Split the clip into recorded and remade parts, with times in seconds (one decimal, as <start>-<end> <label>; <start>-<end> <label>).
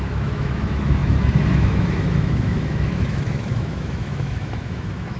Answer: 0.0-5.2 remade